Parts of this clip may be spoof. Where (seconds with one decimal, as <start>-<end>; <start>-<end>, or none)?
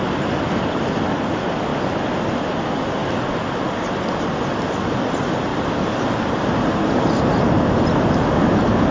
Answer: 5.5-7.2